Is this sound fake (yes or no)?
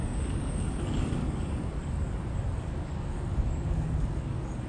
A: yes